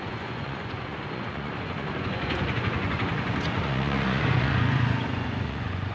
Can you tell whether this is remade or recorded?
remade